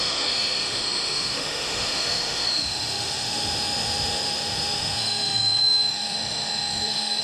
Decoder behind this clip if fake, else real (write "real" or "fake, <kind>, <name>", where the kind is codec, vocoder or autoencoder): fake, autoencoder, DAC-VAE